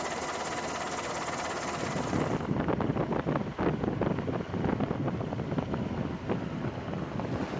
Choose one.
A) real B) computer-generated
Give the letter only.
A